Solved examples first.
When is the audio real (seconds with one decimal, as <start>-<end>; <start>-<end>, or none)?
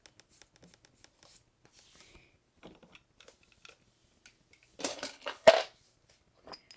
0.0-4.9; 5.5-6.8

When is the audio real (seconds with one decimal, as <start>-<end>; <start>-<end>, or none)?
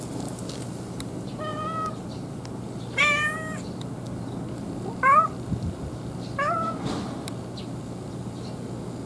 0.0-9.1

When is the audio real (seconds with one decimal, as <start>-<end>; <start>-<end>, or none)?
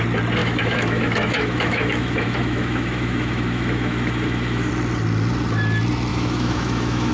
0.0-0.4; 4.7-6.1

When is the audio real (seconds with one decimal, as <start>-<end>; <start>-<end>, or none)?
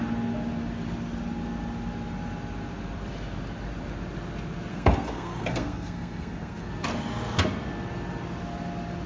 0.0-4.7; 6.7-9.1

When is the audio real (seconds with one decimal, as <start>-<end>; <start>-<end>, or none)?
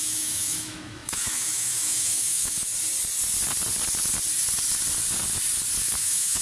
2.7-5.8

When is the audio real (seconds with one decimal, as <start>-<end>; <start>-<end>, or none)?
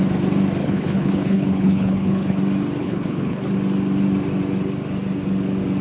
0.0-0.6; 2.4-2.8; 3.5-5.8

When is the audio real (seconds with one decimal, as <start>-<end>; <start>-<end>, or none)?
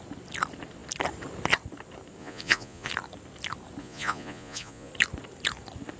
0.0-2.2; 2.9-3.8; 4.9-6.0